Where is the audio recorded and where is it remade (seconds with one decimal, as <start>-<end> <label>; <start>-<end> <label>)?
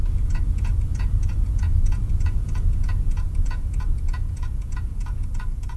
0.0-5.8 remade